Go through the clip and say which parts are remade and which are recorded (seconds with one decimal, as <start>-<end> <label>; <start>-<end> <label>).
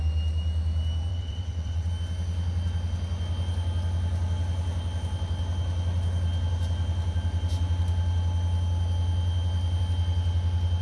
0.0-1.1 recorded; 1.1-1.9 remade; 1.9-10.8 recorded